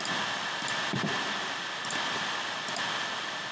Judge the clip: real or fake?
real